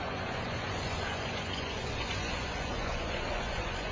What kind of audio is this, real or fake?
fake